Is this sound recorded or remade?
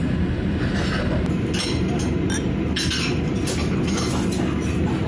recorded